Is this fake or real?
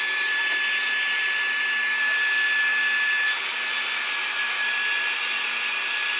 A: real